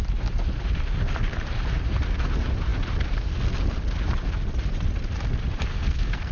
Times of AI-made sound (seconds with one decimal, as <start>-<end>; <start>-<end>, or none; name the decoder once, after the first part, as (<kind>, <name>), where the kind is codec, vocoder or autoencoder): 5.7-6.3 (codec, SNAC)

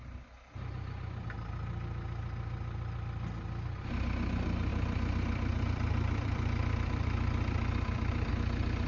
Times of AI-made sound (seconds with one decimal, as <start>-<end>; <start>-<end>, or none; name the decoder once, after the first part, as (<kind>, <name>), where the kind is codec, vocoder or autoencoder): 4.7-8.3 (vocoder, BigVGAN v2)

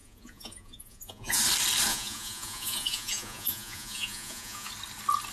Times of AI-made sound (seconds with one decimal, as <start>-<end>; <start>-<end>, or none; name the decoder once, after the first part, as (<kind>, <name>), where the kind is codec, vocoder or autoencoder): 0.0-1.4 (vocoder, Vocos); 1.9-4.7

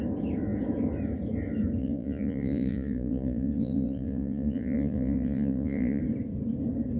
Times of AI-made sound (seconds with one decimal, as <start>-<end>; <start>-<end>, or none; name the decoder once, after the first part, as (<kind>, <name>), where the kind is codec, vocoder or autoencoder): 1.8-6.0 (vocoder, Vocos)

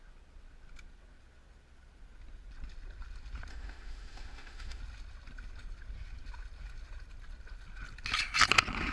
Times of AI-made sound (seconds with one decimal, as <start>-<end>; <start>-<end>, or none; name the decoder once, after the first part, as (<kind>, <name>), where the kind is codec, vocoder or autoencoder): 3.5-4.8 (autoencoder, DAC-VAE)

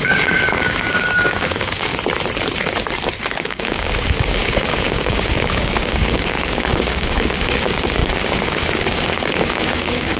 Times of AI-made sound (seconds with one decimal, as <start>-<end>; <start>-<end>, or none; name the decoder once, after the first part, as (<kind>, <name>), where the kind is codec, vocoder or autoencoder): 0.0-1.9 (codec, DAC); 3.1-10.2